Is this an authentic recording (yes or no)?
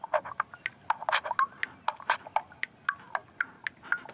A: yes